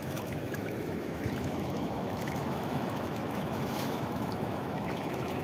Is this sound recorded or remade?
remade